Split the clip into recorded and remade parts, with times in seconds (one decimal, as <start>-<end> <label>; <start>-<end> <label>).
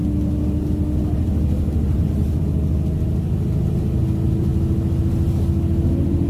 0.0-6.3 recorded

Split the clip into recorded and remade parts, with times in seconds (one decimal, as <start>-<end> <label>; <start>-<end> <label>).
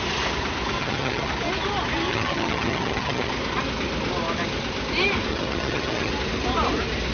0.0-0.8 recorded; 0.8-1.3 remade; 1.3-2.1 recorded; 2.1-3.3 remade; 3.3-5.3 recorded; 5.3-6.1 remade; 6.1-7.1 recorded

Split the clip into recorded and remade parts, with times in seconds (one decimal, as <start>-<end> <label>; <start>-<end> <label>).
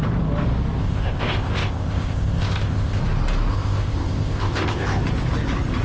0.0-0.8 recorded; 0.8-3.0 remade; 3.0-3.5 recorded; 3.5-5.0 remade; 5.0-5.8 recorded